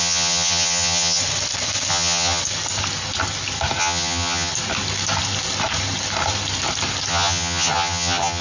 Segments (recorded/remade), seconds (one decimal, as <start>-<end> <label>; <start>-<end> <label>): 0.0-1.2 remade; 1.2-1.9 recorded; 1.9-2.4 remade; 2.4-3.8 recorded; 3.8-4.5 remade; 4.5-7.1 recorded; 7.1-8.4 remade